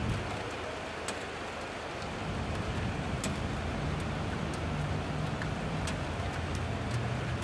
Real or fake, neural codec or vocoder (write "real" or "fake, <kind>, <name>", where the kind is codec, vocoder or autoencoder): real